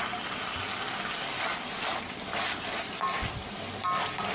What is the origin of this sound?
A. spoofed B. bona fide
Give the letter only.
B